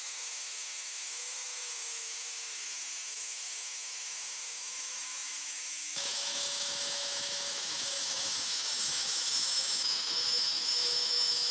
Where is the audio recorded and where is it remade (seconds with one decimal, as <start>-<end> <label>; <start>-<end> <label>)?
0.0-11.5 remade